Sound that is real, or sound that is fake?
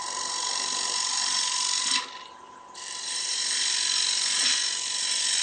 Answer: fake